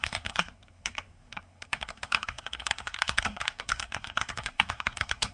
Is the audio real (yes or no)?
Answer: no